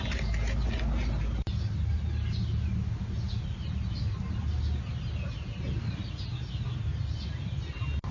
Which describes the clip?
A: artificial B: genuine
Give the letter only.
B